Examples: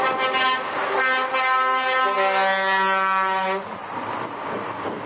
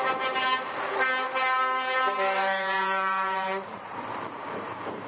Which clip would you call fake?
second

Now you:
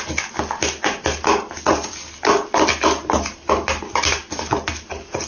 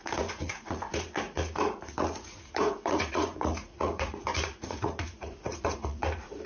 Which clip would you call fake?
second